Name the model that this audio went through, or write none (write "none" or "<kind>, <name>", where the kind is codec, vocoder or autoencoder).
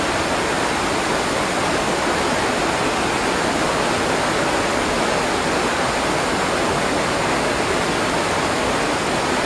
none